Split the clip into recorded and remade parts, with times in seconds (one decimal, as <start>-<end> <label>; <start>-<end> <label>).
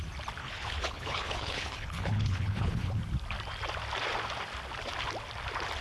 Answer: 0.0-0.4 recorded; 0.4-3.0 remade; 3.0-5.8 recorded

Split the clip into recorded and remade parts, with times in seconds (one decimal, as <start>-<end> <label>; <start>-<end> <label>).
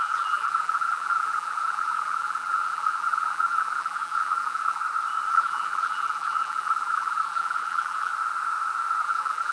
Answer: 0.0-4.8 remade; 4.8-5.3 recorded; 5.3-8.1 remade; 8.1-9.0 recorded; 9.0-9.5 remade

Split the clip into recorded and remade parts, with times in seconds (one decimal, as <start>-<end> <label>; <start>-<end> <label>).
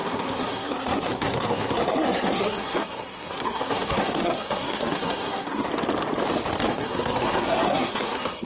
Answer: 0.0-5.7 remade; 5.7-6.7 recorded; 6.7-8.5 remade